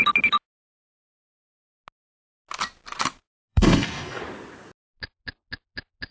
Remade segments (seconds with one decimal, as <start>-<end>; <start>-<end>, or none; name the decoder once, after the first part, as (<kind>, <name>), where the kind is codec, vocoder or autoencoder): 3.5-4.2 (codec, SNAC)